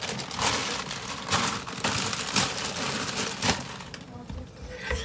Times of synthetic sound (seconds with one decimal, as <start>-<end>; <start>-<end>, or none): none